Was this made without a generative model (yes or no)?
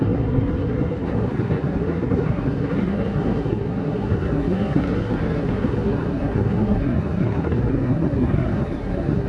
no